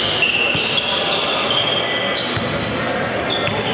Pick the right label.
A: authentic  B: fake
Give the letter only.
A